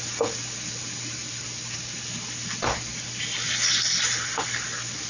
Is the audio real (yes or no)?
yes